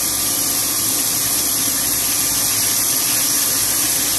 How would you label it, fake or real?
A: real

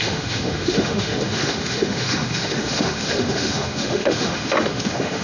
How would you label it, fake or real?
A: fake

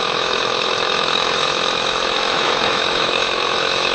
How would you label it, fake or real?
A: fake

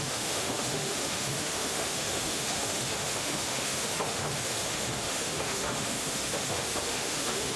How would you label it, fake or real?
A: fake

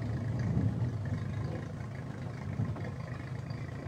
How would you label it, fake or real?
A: real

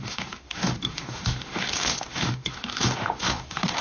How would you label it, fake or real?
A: fake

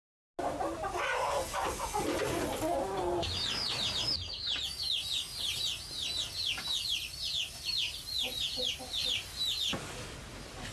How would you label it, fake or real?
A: real